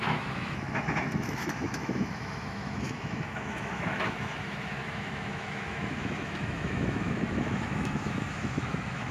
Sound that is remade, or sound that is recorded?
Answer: remade